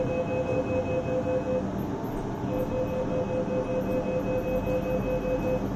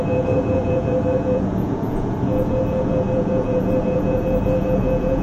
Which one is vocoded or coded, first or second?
second